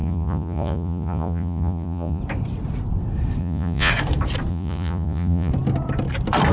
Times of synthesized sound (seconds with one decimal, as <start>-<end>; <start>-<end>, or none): 0.0-2.2; 3.4-3.9; 4.5-5.5